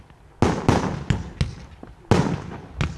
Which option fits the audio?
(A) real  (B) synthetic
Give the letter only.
A